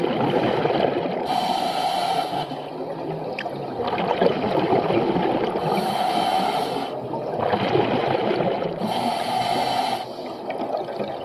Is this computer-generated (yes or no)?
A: no